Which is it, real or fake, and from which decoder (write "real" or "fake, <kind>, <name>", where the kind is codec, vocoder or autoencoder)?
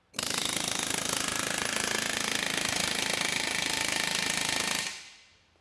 real